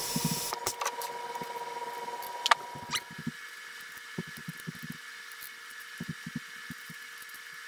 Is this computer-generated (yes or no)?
no